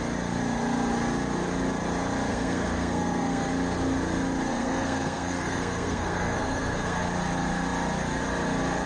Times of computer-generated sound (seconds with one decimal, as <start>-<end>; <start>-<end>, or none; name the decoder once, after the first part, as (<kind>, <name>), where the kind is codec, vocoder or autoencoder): 2.3-3.5 (codec, SNAC); 4.5-7.0